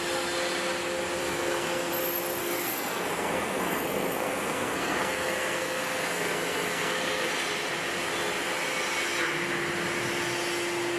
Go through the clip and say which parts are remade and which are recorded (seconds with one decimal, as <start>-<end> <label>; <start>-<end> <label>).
0.0-1.2 recorded; 1.2-1.9 remade; 1.9-2.4 recorded; 2.4-7.3 remade; 7.3-11.0 recorded